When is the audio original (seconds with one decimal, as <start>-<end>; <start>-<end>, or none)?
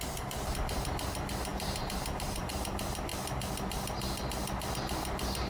0.0-1.5; 2.5-5.5